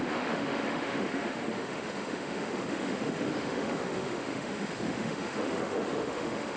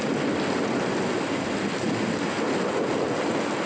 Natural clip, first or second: second